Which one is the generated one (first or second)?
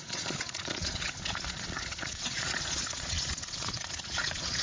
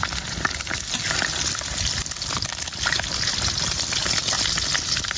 first